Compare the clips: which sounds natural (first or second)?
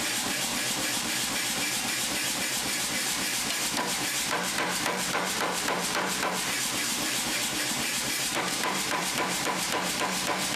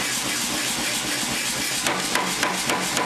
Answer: second